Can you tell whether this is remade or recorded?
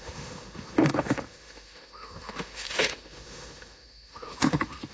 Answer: remade